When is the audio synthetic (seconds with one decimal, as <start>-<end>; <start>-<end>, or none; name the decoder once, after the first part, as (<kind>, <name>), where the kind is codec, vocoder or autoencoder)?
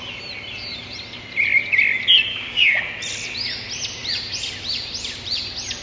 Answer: 2.3-2.8 (codec, DAC)